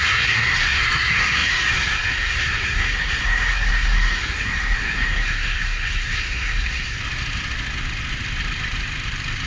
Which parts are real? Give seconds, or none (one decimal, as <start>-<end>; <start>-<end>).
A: 7.0-9.5